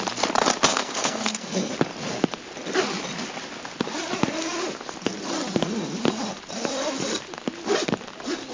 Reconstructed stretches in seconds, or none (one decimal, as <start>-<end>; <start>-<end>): 0.7-1.7